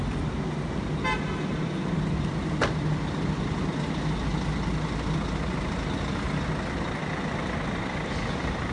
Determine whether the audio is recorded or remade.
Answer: recorded